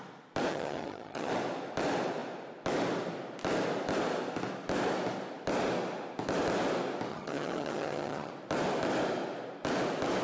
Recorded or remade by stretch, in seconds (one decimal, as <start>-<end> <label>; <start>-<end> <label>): 0.0-0.5 recorded; 0.5-1.3 remade; 1.3-7.1 recorded; 7.1-8.3 remade; 8.3-10.2 recorded